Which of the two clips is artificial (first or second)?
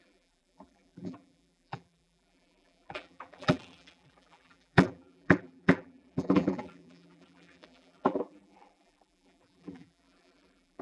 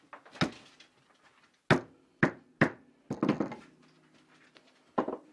first